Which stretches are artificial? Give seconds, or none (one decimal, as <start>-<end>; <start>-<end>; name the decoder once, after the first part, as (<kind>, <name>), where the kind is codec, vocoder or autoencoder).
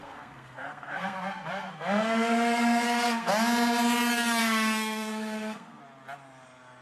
0.0-3.3 (codec, SNAC); 4.4-5.8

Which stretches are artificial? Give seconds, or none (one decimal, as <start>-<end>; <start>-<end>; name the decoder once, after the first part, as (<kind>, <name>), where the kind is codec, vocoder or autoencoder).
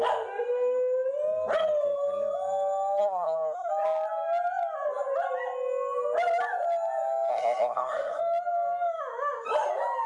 3.0-3.7 (codec, SNAC); 7.3-8.2